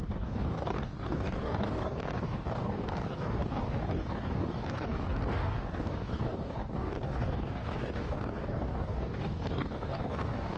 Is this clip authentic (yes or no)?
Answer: no